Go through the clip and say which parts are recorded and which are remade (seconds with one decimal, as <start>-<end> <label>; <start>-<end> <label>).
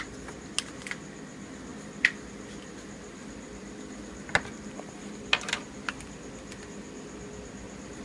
0.0-8.0 recorded